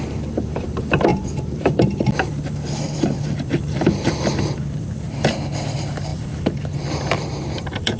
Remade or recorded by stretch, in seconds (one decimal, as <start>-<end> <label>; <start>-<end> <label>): 0.0-8.0 remade